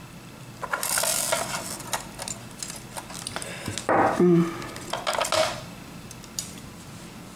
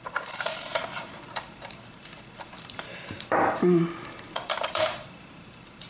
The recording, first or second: first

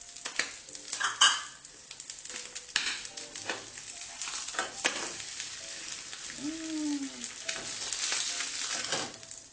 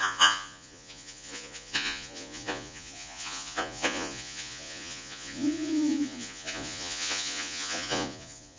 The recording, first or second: first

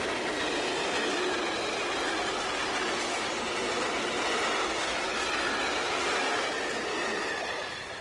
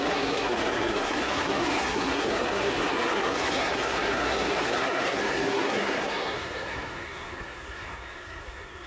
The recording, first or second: first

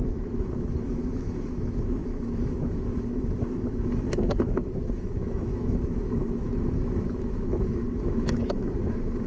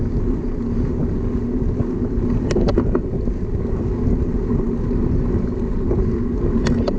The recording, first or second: second